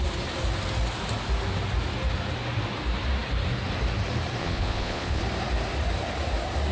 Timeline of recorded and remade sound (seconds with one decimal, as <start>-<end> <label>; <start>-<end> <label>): 0.0-4.4 recorded; 4.4-5.2 remade; 5.2-6.7 recorded